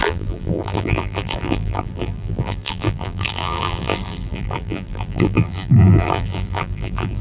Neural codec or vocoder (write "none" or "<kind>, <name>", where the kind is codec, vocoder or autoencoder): vocoder, BigVGAN v2